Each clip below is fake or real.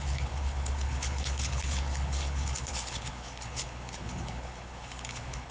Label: fake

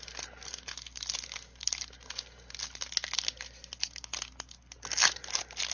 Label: real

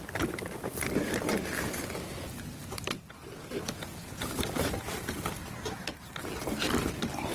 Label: fake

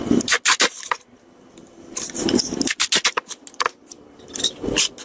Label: real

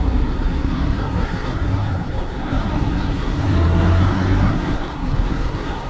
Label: fake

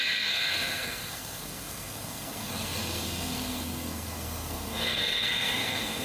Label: fake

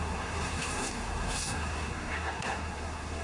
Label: fake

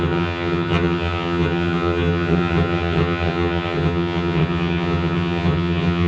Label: fake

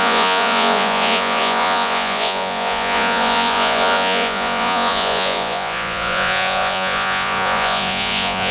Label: fake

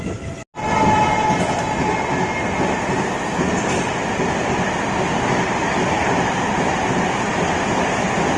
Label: real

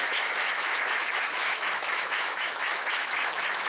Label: fake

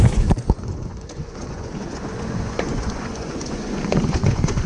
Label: fake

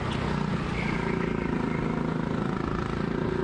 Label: real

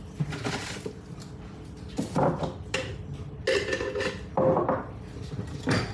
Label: real